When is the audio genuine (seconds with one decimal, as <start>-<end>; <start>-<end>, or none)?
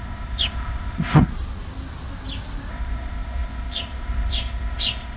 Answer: 1.3-2.7